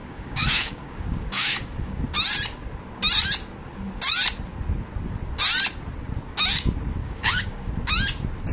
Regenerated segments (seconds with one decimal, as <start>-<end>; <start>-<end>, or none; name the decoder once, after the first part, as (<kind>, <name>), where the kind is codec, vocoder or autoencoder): 0.0-2.0 (codec, DAC); 7.0-7.7